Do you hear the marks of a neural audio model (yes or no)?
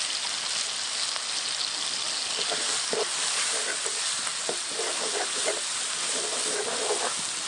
no